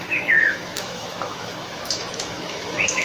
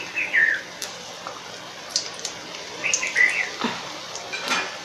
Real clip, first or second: second